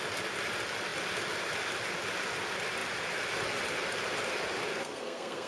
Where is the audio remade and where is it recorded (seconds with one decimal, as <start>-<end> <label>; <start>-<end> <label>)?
0.0-4.7 recorded; 4.7-5.5 remade